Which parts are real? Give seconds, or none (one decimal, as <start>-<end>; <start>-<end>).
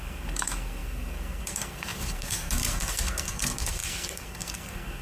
none